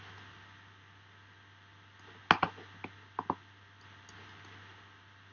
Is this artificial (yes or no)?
no